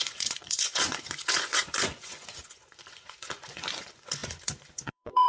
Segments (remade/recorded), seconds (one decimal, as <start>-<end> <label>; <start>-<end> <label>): 0.0-5.3 remade